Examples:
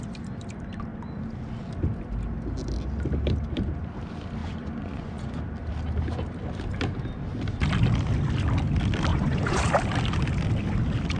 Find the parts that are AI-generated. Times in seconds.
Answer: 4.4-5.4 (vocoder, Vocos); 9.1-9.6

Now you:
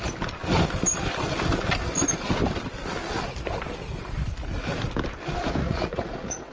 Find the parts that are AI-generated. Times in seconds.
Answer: 5.6-6.5 (vocoder, Vocos)

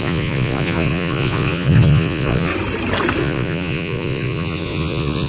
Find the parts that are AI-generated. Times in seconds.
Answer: 0.0-2.5 (vocoder, Vocos); 3.2-5.3

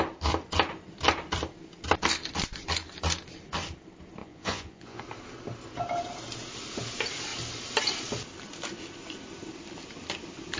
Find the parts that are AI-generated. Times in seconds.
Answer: 4.2-5.0 (vocoder, Vocos)